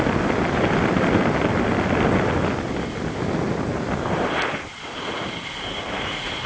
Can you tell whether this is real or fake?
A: real